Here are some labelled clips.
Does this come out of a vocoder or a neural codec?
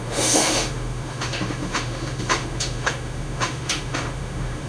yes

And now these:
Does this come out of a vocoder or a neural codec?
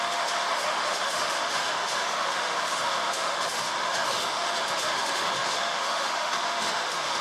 yes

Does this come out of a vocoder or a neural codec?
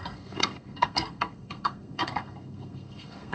yes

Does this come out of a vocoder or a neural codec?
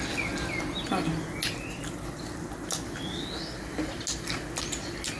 no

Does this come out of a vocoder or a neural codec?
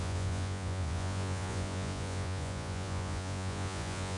yes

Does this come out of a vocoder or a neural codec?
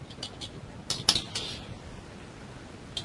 no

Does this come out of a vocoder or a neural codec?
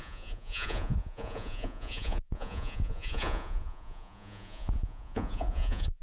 yes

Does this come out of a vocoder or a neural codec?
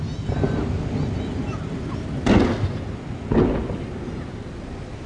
no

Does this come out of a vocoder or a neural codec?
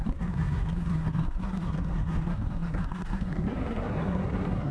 yes